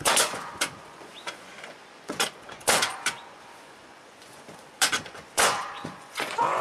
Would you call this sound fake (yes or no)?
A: yes